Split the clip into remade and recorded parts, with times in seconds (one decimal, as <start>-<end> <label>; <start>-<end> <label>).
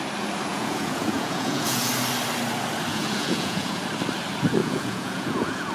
0.0-0.5 recorded; 0.5-1.9 remade; 1.9-2.9 recorded; 2.9-3.8 remade; 3.8-4.6 recorded; 4.6-5.7 remade